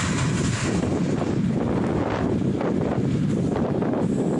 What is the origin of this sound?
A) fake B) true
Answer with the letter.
B